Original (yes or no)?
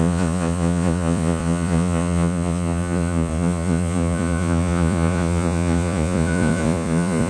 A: no